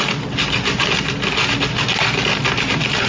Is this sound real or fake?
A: real